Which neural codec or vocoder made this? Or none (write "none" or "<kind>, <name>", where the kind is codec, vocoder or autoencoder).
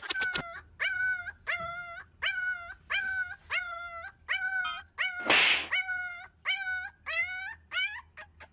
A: none